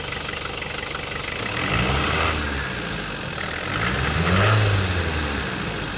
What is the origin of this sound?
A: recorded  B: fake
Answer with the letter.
A